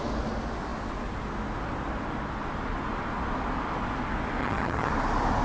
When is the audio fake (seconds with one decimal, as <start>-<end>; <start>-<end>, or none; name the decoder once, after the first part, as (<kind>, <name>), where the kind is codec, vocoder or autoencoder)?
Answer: 4.4-4.9 (vocoder, HiFi-GAN)